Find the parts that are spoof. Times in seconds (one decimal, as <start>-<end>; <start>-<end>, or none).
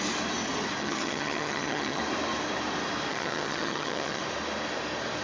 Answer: 0.8-2.0; 3.1-4.2